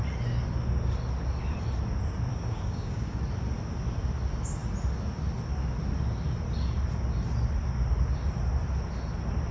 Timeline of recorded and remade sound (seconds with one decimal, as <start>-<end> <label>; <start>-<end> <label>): 0.0-2.3 recorded; 2.3-3.2 remade; 3.2-9.5 recorded